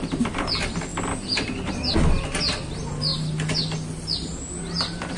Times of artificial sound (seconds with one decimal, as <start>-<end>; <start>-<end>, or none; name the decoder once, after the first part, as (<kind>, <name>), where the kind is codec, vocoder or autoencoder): none